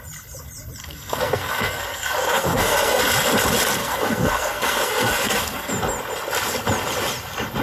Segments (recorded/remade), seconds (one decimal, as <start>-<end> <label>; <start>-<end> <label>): 0.0-0.8 recorded; 0.8-3.0 remade; 3.0-3.8 recorded; 3.8-5.7 remade; 5.7-7.6 recorded